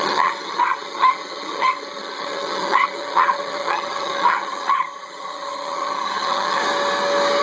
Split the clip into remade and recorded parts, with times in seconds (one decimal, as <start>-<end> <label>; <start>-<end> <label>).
0.0-6.6 remade; 6.6-7.4 recorded